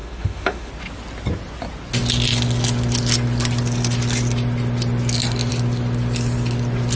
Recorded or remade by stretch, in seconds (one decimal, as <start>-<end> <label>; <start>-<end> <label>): 0.0-0.7 remade; 0.7-7.0 recorded